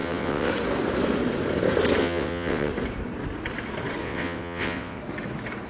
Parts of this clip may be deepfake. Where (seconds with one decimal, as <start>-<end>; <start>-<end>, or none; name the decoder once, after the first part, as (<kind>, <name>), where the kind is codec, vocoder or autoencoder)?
0.0-0.5 (vocoder, WaveNeXt); 2.0-2.7; 4.0-5.0